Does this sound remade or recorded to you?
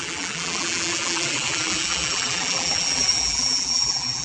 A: remade